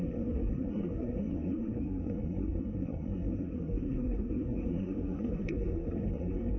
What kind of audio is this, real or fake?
fake